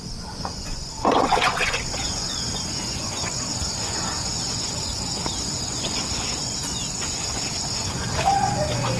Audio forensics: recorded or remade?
remade